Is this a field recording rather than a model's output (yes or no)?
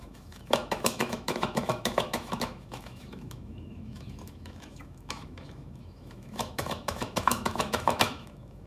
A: no